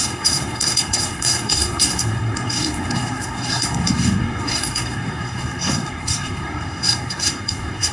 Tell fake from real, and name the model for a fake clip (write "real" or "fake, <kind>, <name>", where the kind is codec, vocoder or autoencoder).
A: fake, codec, SNAC